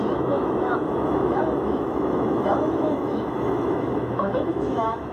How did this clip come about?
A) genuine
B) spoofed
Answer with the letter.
B